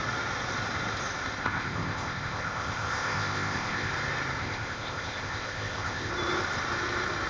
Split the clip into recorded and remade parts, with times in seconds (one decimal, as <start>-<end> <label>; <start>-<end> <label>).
0.0-1.4 recorded; 1.4-3.9 remade; 3.9-4.4 recorded; 4.4-6.1 remade; 6.1-7.3 recorded